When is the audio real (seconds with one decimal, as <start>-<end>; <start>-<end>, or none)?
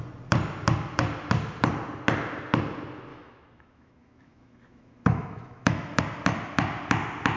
0.0-3.1; 6.0-7.4